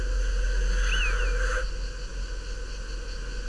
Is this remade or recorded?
recorded